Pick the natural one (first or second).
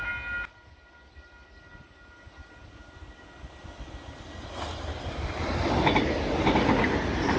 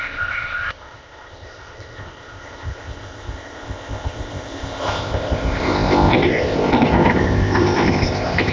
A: first